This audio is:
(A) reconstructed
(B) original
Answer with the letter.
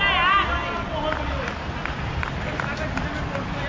B